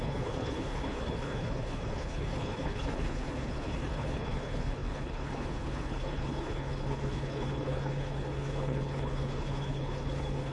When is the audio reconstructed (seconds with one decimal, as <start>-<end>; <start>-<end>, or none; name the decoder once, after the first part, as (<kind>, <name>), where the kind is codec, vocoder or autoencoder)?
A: 0.0-10.5 (codec, HILCodec)